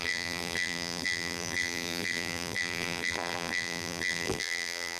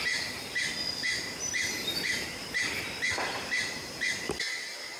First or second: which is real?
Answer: second